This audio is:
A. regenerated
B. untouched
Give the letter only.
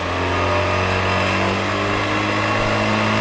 B